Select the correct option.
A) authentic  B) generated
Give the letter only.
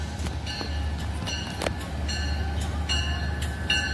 A